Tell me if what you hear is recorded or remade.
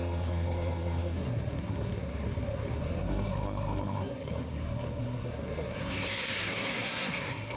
remade